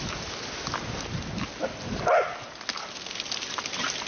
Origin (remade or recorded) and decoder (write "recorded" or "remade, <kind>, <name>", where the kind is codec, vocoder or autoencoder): recorded